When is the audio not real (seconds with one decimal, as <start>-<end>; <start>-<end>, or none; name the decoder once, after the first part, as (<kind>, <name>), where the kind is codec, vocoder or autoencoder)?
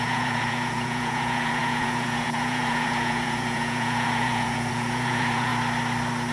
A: 0.0-5.5 (vocoder, Vocos)